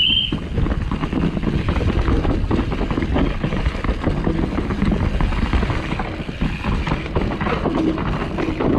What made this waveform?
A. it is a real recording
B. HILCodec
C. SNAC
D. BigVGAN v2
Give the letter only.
A